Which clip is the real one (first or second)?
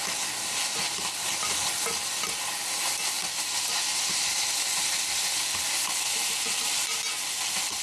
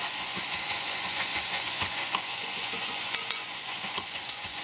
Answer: first